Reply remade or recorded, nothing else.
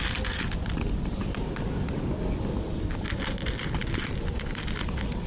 recorded